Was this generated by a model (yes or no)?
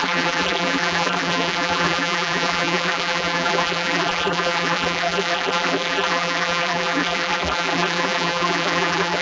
yes